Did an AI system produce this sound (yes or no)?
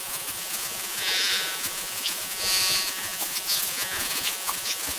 yes